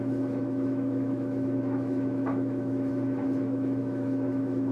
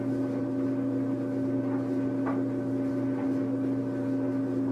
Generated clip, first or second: first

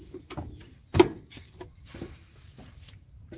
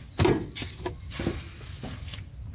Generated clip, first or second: first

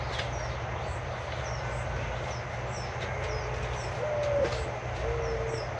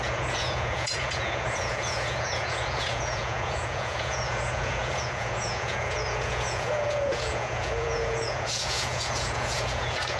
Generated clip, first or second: second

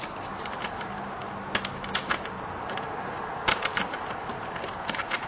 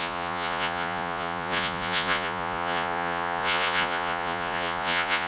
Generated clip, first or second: second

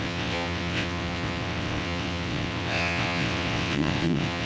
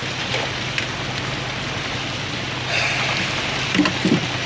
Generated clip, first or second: first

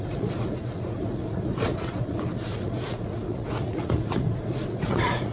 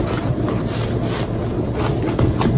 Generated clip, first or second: first